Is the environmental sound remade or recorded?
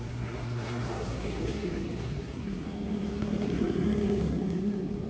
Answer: remade